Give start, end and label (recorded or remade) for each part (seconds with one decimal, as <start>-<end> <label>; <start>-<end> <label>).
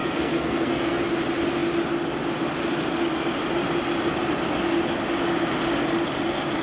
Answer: 0.0-1.0 remade; 1.0-6.6 recorded